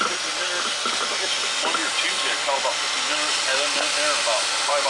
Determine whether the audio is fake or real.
real